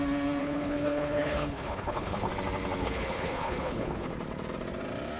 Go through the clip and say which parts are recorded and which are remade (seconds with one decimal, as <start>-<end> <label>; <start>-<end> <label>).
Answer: 0.0-0.4 recorded; 0.4-2.3 remade; 2.3-2.8 recorded; 2.8-4.1 remade; 4.1-5.2 recorded